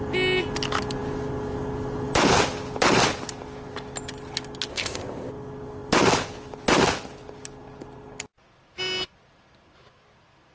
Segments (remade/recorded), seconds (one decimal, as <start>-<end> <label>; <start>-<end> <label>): 0.0-4.7 recorded; 4.7-5.3 remade; 5.3-10.5 recorded